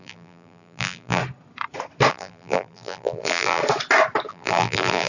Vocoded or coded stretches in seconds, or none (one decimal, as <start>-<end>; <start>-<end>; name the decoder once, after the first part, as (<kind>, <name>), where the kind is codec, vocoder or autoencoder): 0.0-1.2 (vocoder, BigVGAN v2); 2.1-3.6; 4.3-5.1